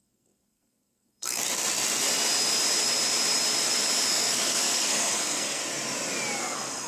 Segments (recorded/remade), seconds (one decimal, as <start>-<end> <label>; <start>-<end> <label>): 0.0-1.4 remade; 1.4-4.1 recorded; 4.1-5.6 remade; 5.6-6.4 recorded; 6.4-6.9 remade